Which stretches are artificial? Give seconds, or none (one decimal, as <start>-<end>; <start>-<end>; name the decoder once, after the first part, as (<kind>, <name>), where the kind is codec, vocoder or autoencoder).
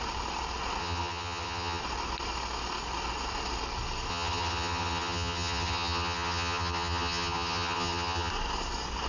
0.8-1.8 (vocoder, HiFi-GAN); 4.1-8.3